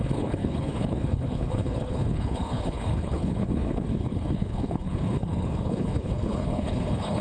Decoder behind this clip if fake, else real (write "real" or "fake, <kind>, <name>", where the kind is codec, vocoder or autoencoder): fake, codec, HILCodec